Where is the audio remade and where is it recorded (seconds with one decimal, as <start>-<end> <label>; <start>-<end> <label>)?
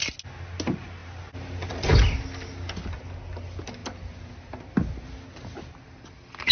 0.0-6.5 recorded